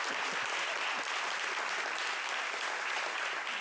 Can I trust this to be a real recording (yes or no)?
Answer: yes